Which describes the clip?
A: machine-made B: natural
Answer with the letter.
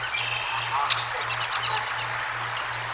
B